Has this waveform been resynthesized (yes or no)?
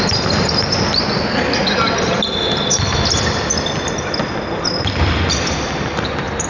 no